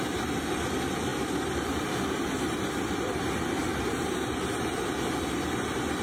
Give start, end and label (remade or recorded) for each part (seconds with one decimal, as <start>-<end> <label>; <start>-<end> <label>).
0.0-1.1 recorded; 1.1-3.2 remade; 3.2-6.0 recorded